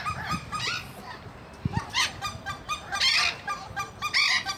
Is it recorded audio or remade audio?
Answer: recorded